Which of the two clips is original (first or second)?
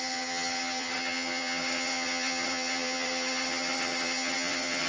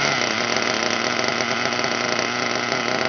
second